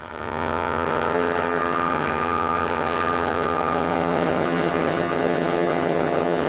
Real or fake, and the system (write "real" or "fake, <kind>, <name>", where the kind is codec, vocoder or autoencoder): fake, vocoder, HiFi-GAN